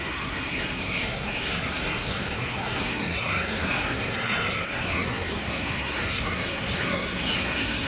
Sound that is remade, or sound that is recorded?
remade